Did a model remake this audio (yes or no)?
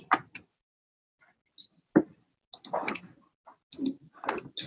no